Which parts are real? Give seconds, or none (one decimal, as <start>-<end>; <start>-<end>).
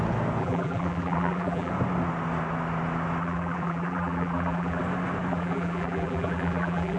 0.0-0.4; 1.7-3.2; 4.8-5.3